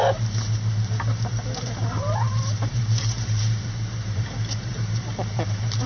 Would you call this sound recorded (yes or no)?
no